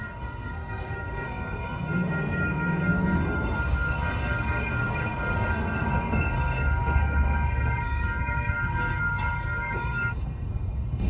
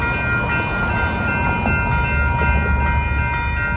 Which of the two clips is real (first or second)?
second